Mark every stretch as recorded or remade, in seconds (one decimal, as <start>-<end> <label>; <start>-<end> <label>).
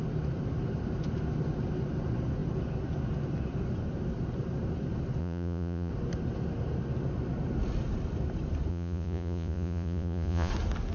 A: 0.0-5.2 recorded; 5.2-5.9 remade; 5.9-8.7 recorded; 8.7-10.5 remade; 10.5-10.9 recorded